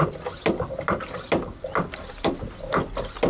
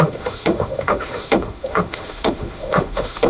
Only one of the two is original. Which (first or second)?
first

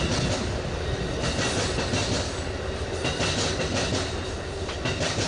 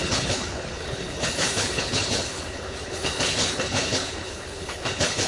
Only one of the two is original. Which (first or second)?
first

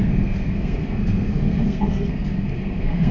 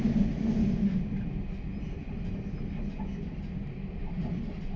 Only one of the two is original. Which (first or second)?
second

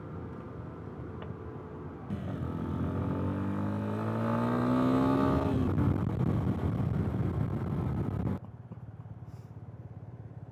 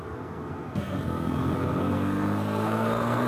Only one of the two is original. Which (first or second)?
first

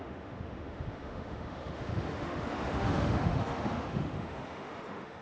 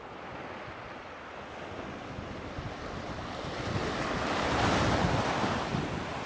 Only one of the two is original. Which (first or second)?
second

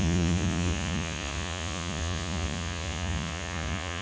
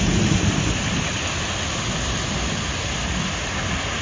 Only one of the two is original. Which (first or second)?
second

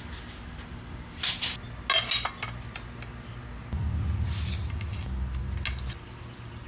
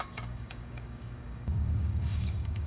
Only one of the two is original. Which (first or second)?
first